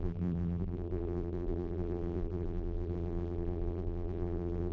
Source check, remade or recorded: remade